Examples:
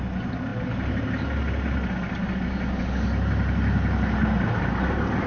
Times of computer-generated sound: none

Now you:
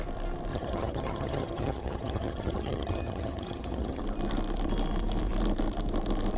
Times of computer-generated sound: 0.5-4.0 (vocoder, HiFi-GAN)

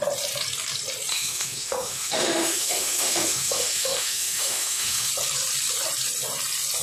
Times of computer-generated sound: 1.1-5.1 (autoencoder, DAC-VAE)

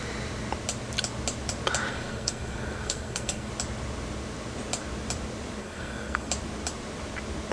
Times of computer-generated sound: 1.9-3.5 (codec, SNAC); 5.6-6.3